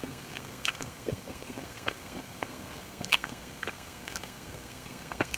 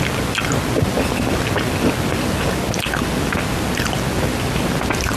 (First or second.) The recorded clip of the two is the second